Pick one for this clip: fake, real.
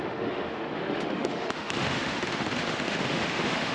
fake